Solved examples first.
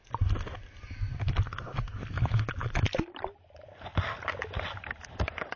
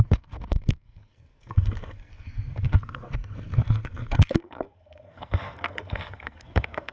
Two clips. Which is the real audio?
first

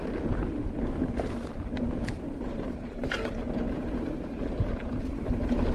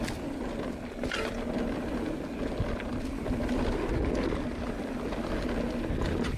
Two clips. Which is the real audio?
second